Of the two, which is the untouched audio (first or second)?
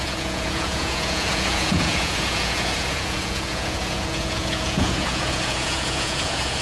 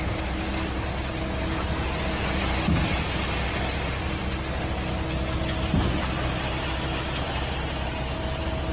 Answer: second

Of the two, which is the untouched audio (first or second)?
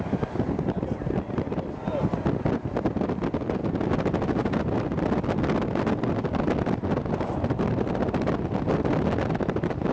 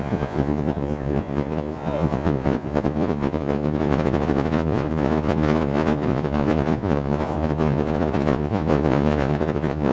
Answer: first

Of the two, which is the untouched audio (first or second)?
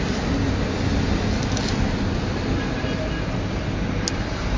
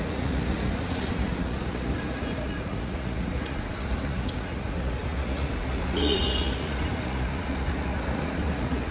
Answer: first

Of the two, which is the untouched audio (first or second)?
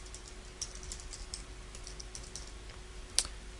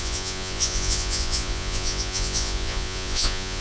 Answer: first